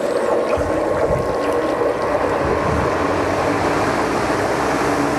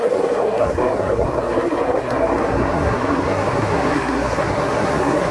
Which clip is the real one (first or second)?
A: first